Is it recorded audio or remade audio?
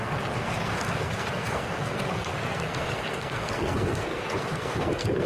remade